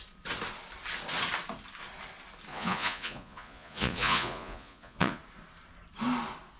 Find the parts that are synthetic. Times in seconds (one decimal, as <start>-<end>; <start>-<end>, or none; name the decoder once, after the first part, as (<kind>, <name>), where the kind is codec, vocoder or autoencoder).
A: 2.5-5.2 (vocoder, Vocos)